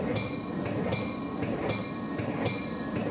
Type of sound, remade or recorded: recorded